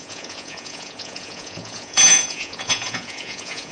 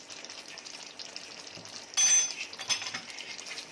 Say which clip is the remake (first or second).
first